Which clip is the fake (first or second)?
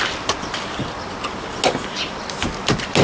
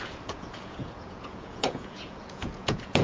second